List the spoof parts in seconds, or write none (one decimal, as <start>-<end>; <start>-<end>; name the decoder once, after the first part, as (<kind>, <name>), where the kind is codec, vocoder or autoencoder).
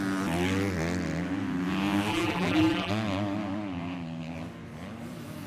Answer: 2.1-2.9 (vocoder, BigVGAN v2)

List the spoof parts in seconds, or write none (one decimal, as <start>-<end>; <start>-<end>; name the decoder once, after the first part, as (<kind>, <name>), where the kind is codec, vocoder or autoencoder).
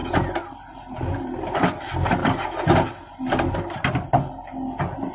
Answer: none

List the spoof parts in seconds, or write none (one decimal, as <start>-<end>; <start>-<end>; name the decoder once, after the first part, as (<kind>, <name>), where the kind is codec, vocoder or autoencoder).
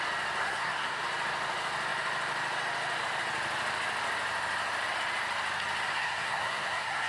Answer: 0.4-1.0 (codec, SNAC); 5.9-7.1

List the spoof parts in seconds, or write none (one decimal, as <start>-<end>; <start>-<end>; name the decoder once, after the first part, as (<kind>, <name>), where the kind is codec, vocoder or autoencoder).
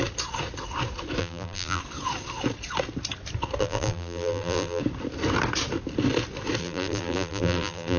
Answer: 1.2-1.8 (vocoder, BigVGAN v2); 3.6-4.8; 6.6-8.0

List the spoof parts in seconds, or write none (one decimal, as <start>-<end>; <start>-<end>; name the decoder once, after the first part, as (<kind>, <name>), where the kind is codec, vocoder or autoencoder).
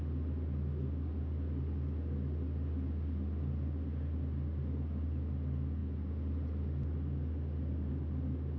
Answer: none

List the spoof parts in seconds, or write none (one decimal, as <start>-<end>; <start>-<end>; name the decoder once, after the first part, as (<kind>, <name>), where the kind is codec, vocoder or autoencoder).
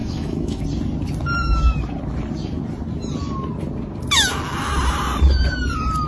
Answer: 0.0-0.6 (autoencoder, DAC-VAE)